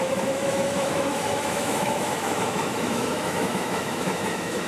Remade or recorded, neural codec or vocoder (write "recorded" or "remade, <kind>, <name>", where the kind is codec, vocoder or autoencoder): remade, autoencoder, DAC-VAE